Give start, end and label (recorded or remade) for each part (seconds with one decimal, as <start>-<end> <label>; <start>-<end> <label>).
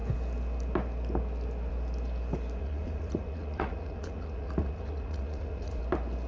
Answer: 0.0-2.6 recorded; 2.6-5.8 remade; 5.8-6.3 recorded